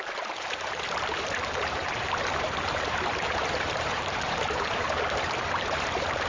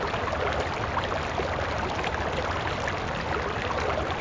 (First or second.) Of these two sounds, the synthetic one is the first